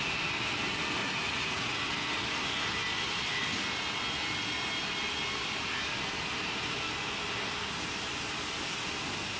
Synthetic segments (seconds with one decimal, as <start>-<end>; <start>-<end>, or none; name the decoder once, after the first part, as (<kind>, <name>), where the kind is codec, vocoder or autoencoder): 1.0-1.8 (vocoder, Vocos)